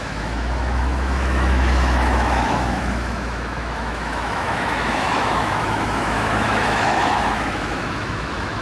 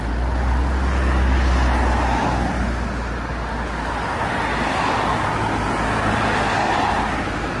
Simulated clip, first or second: first